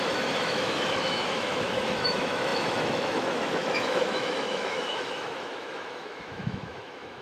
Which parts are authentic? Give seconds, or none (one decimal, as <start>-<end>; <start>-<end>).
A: none